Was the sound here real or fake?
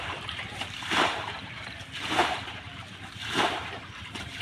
fake